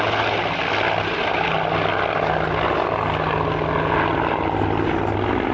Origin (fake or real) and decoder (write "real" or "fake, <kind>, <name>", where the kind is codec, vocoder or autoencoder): real